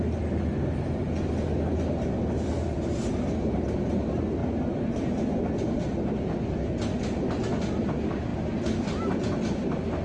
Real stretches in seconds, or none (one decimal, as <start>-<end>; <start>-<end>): 0.0-10.0